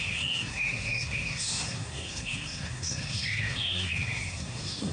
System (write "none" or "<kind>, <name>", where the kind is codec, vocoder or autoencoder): codec, SNAC